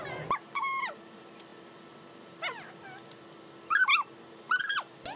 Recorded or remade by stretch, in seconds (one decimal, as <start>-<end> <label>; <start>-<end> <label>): 0.0-5.2 recorded